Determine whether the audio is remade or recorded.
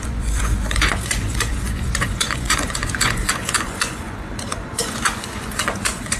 remade